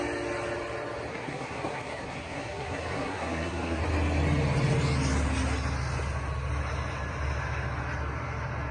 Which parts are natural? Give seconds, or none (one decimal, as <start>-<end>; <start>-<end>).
0.0-1.1; 3.8-8.7